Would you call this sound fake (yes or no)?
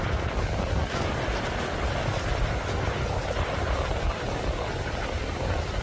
no